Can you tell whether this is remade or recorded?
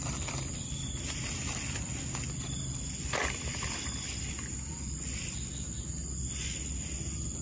recorded